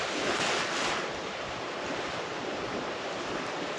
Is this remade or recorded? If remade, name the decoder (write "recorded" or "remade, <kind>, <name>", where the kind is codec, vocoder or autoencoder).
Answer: remade, vocoder, BigVGAN v2